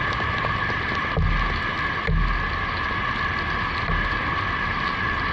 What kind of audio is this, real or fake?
real